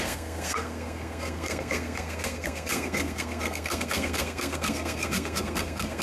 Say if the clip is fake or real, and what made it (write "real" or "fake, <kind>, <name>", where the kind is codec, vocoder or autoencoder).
fake, codec, SNAC